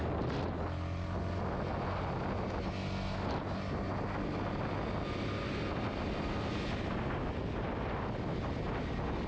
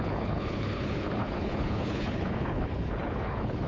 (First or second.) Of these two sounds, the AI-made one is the second